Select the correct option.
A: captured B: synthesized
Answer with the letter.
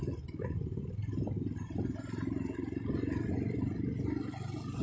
A